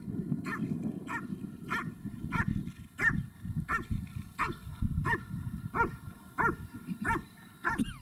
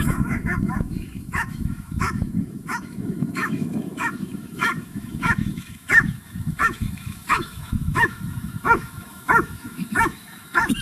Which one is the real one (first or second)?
first